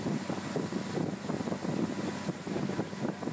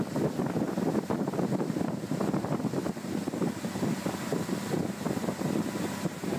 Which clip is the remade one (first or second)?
second